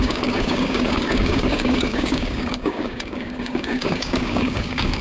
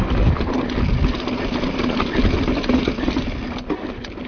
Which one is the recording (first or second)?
second